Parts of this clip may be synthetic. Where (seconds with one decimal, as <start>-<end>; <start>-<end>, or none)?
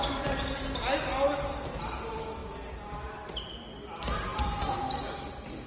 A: none